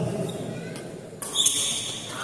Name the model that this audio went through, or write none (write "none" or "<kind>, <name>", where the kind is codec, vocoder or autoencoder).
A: none